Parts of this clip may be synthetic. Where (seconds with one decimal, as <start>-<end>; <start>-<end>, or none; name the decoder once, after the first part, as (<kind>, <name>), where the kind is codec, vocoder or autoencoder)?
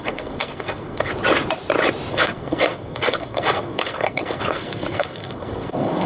0.0-1.1 (codec, SNAC); 2.1-6.1